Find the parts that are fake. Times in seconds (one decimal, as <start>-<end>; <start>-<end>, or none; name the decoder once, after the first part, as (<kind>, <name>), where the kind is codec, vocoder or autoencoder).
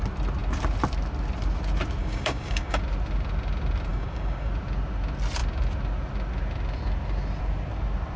2.0-2.8 (codec, DAC); 3.9-4.5